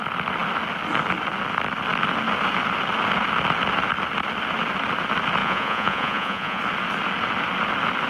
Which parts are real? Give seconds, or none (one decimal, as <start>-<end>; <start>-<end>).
0.0-5.4; 6.6-8.1